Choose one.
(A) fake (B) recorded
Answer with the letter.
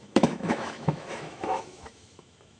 A